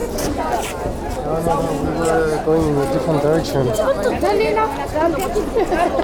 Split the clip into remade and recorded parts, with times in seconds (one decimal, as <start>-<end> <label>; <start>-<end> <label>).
0.0-3.6 recorded; 3.6-4.2 remade; 4.2-6.0 recorded